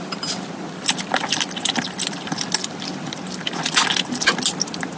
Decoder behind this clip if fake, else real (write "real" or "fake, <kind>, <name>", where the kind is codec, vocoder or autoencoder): real